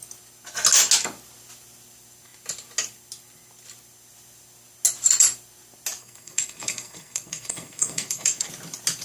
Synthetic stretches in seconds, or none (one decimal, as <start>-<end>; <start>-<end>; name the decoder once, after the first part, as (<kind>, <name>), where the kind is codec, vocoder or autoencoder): 6.0-8.5 (codec, SNAC)